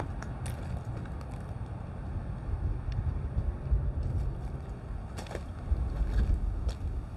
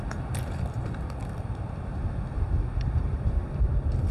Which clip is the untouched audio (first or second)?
first